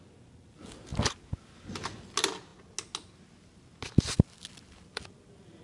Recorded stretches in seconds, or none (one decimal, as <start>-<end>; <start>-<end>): 0.0-5.6